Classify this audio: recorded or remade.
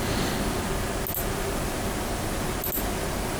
recorded